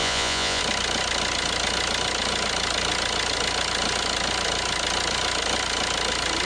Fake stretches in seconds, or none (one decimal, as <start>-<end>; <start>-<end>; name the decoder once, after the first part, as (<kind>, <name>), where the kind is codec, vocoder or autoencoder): 0.0-0.6 (vocoder, Vocos)